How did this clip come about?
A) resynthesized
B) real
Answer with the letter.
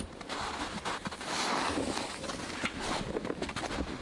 B